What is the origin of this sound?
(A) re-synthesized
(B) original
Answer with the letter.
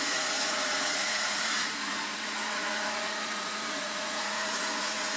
A